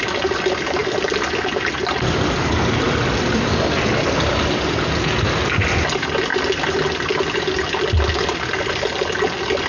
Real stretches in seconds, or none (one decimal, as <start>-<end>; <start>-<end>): 0.0-9.7